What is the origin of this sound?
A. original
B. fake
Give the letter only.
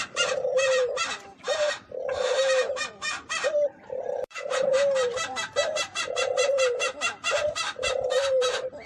B